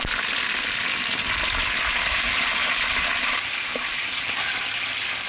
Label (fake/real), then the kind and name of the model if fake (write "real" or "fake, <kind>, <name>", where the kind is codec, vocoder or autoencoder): real